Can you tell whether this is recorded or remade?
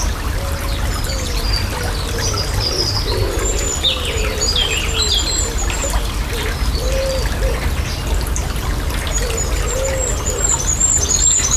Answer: recorded